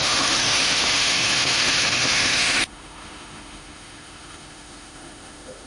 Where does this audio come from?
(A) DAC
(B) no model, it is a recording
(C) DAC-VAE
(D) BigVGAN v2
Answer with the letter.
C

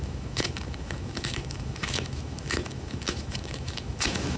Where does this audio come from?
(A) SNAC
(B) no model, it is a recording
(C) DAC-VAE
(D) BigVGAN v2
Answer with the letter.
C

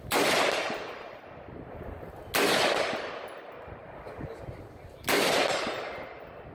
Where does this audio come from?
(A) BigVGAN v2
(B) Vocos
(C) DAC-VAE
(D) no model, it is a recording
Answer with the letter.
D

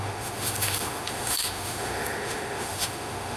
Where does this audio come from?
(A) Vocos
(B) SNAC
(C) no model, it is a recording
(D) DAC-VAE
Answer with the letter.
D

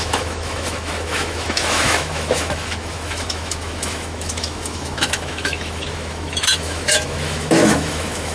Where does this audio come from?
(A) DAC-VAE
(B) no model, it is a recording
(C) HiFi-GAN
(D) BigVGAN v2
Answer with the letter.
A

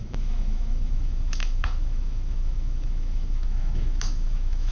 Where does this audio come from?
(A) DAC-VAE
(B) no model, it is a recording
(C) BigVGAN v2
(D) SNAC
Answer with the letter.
A